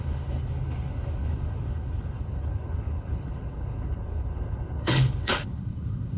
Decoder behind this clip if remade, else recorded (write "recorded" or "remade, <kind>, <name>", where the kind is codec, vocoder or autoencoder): remade, codec, HILCodec